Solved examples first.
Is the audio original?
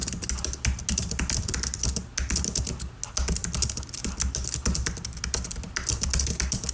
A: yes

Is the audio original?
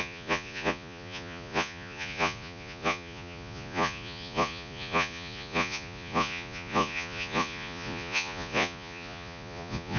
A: no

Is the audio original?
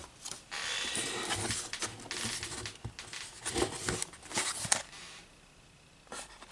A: yes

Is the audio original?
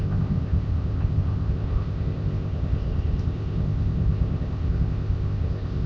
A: no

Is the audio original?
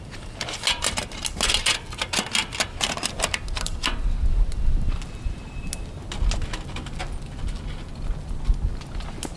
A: yes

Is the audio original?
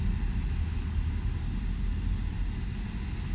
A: yes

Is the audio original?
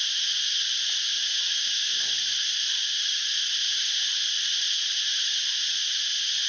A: no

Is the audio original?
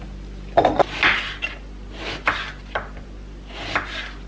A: yes